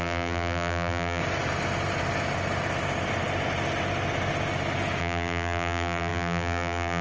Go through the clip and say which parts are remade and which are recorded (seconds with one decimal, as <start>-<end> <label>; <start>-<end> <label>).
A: 0.0-1.2 remade; 1.2-5.0 recorded; 5.0-7.0 remade